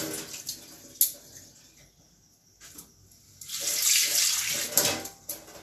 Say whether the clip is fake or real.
real